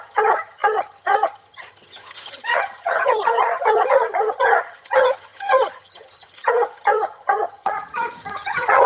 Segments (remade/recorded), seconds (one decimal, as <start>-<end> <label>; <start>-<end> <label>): 0.0-8.9 remade

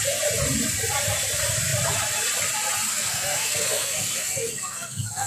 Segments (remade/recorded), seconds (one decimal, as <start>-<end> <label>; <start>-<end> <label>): 0.0-2.9 recorded; 2.9-5.3 remade

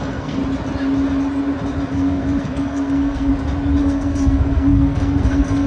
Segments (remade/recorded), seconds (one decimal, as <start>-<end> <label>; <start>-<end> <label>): 0.0-0.4 remade; 0.4-1.9 recorded; 1.9-3.3 remade; 3.3-3.8 recorded; 3.8-5.7 remade

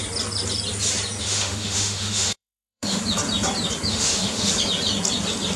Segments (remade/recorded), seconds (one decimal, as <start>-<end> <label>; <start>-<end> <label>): 0.0-1.2 recorded; 1.2-3.0 remade; 3.0-3.9 recorded; 3.9-4.5 remade; 4.5-5.6 recorded

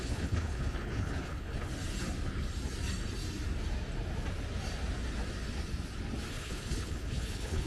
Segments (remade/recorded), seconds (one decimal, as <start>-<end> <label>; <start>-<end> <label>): 0.0-1.7 remade; 1.7-6.3 recorded; 6.3-7.7 remade